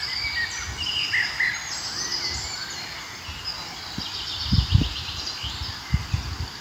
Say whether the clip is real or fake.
real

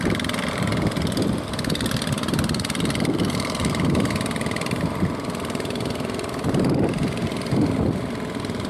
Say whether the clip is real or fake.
fake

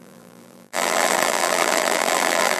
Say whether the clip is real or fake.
fake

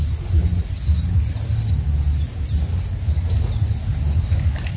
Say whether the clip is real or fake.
real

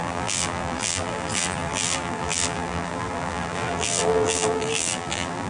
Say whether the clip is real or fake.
fake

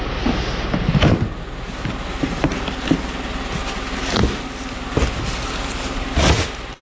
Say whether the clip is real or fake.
real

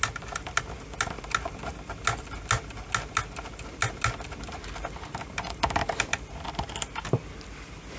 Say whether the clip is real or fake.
real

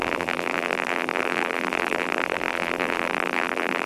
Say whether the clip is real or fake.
fake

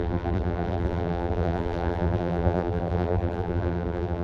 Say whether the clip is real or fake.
fake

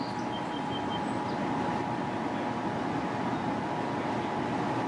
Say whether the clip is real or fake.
real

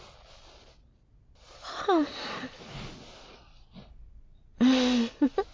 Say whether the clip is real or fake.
real